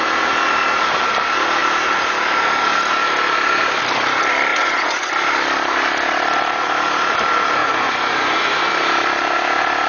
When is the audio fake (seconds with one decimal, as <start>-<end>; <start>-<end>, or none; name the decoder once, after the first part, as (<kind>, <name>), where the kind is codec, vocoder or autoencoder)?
4.5-5.1 (vocoder, Vocos); 7.6-8.7